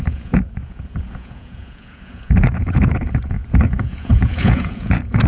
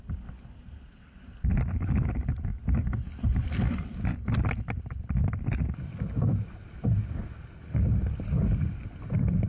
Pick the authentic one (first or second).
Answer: second